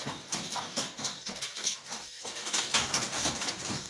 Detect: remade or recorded remade